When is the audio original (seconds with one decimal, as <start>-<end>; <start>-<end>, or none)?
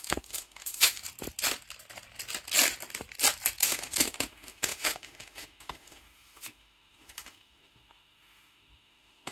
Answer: 1.0-3.6